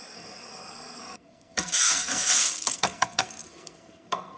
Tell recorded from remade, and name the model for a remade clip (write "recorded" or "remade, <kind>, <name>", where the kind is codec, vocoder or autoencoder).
remade, codec, SNAC